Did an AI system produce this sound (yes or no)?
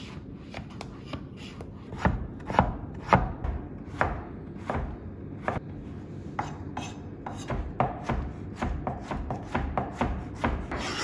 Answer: no